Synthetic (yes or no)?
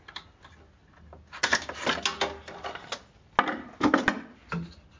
no